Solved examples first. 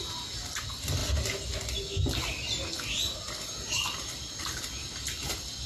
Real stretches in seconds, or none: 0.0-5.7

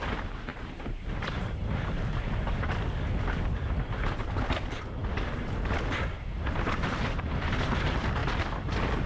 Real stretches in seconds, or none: 0.0-0.5; 2.8-8.2; 8.7-9.1

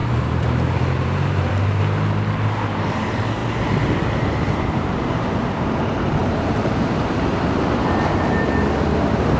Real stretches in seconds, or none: 1.5-3.4; 5.4-6.2; 7.3-9.4